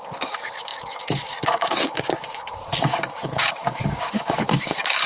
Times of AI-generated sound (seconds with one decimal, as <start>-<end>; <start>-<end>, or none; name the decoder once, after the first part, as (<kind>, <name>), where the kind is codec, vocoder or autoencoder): 0.0-5.1 (codec, DAC)